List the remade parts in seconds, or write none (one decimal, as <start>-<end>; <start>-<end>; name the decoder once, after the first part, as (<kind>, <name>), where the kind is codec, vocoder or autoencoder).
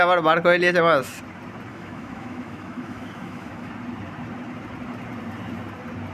1.7-3.7 (autoencoder, DAC-VAE)